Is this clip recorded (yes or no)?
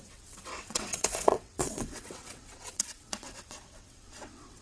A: no